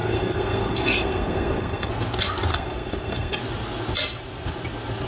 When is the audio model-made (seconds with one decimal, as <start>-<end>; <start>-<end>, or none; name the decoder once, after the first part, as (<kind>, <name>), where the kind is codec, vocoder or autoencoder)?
0.0-1.9 (codec, SNAC); 2.5-3.4